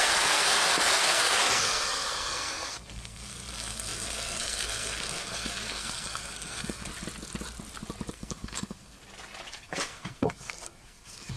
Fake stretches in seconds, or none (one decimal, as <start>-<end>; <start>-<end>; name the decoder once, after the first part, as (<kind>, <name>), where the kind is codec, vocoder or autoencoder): 0.0-6.9 (codec, SNAC); 8.1-9.0; 9.5-11.4